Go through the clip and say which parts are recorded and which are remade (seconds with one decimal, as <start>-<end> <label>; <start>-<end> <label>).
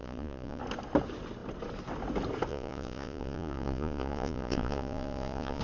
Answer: 0.0-0.6 remade; 0.6-2.5 recorded; 2.5-5.6 remade